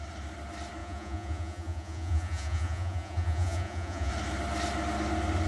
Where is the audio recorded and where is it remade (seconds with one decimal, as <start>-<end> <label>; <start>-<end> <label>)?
0.0-0.8 recorded; 0.8-4.1 remade; 4.1-5.5 recorded